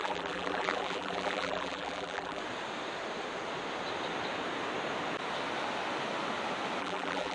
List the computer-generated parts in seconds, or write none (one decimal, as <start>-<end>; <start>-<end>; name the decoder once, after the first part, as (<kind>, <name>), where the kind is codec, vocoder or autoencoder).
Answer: 0.0-2.4 (vocoder, BigVGAN v2); 6.8-7.3